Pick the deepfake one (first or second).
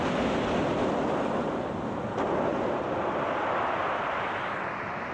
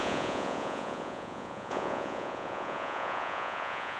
second